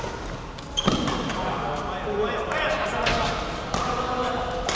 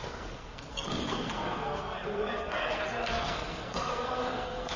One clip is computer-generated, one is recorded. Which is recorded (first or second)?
first